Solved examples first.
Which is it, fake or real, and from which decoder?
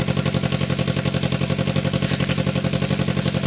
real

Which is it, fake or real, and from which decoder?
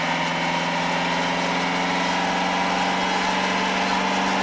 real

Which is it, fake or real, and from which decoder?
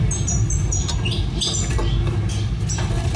real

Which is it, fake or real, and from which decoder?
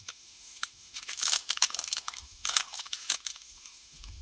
fake, autoencoder, DAC-VAE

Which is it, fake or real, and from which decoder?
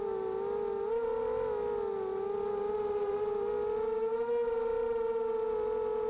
real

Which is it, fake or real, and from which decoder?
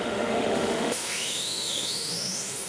fake, autoencoder, DAC-VAE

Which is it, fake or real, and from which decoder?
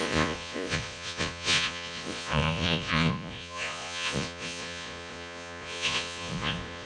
fake, vocoder, Vocos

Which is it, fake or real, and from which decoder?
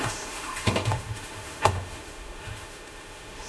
fake, autoencoder, DAC-VAE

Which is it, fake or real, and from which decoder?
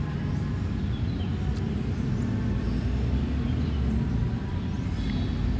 real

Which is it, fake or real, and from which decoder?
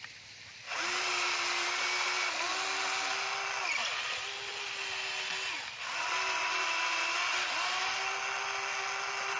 real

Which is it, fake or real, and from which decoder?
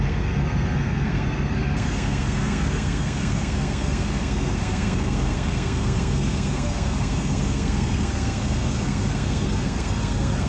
fake, codec, SNAC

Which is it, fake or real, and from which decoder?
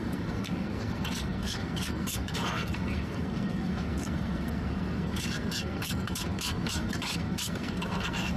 fake, codec, SNAC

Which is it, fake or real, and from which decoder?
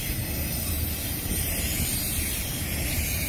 fake, vocoder, BigVGAN v2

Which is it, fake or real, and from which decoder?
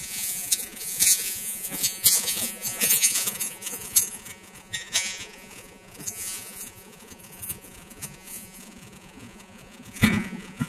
fake, vocoder, Vocos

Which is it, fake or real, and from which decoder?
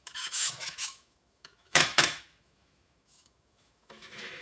fake, autoencoder, DAC-VAE